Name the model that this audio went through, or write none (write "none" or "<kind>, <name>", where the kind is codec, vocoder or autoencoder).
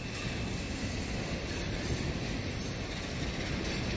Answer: none